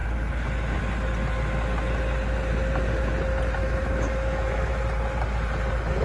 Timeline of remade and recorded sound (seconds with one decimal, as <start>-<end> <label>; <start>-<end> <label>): 0.0-3.6 recorded; 3.6-4.7 remade; 4.7-6.0 recorded